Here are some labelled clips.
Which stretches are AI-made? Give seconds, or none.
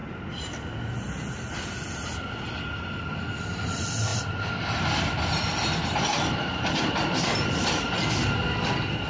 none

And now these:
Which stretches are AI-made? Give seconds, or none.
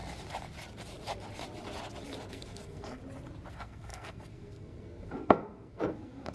2.3-3.0 (codec, SNAC); 3.5-6.3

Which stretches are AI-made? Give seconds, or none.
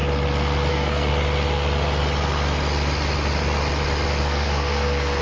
0.7-1.1 (codec, SNAC); 4.2-5.2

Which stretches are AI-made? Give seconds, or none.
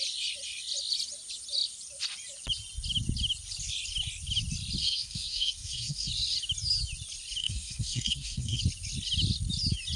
4.8-6.1 (codec, SNAC); 7.4-8.6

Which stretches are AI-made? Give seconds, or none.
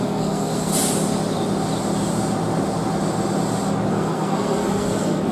0.0-0.7 (codec, SNAC); 3.9-5.3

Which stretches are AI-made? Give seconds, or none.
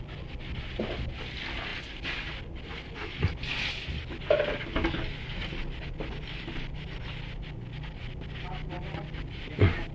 none